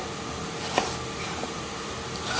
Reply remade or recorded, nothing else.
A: recorded